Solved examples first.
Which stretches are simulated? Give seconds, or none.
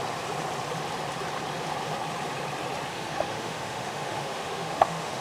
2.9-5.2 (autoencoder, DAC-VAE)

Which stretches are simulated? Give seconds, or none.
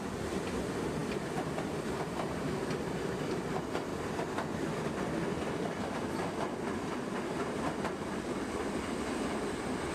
none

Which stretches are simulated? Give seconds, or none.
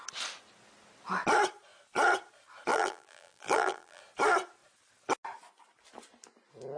2.7-4.0 (vocoder, BigVGAN v2)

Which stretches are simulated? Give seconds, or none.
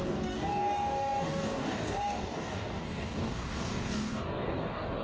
0.0-5.0 (codec, DAC)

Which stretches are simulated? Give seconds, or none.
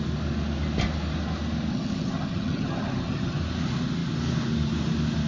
1.7-3.4 (vocoder, HiFi-GAN)